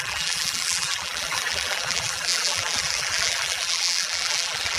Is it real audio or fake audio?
fake